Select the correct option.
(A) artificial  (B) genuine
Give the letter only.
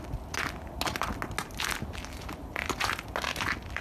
B